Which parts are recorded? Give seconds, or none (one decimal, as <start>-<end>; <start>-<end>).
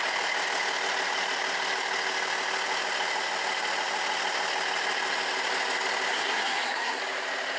0.0-6.1; 7.0-7.6